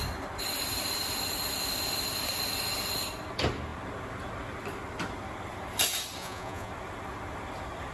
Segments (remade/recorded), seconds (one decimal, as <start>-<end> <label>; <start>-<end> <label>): 0.0-6.2 recorded; 6.2-6.7 remade; 6.7-7.9 recorded